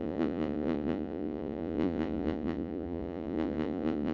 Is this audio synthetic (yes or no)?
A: yes